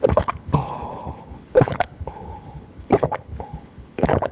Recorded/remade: remade